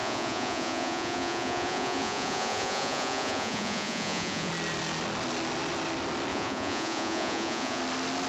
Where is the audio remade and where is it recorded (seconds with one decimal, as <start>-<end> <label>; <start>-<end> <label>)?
0.0-4.5 remade; 4.5-6.3 recorded; 6.3-7.8 remade; 7.8-8.3 recorded